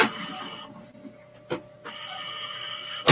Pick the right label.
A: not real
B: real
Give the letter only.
B